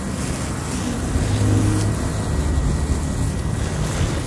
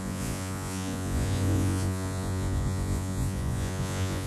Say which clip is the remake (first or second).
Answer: second